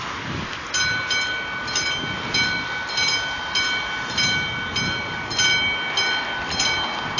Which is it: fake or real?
real